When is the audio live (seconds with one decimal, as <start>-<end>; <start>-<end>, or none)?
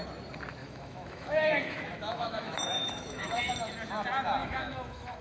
0.0-0.6; 3.5-4.4